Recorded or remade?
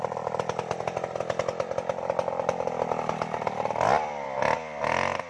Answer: recorded